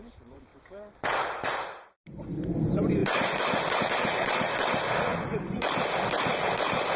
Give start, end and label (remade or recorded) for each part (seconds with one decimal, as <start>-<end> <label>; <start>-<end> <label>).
0.0-0.5 remade; 0.5-2.3 recorded; 2.3-7.0 remade